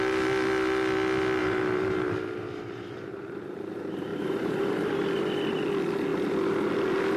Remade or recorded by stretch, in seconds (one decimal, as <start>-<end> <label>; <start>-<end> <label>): 0.0-1.4 recorded; 1.4-3.6 remade; 3.6-4.1 recorded; 4.1-5.0 remade; 5.0-7.2 recorded